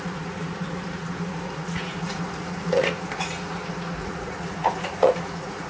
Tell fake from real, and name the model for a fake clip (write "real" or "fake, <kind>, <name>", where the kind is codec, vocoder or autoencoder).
fake, vocoder, Vocos